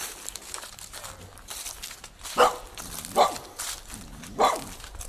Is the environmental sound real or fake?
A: real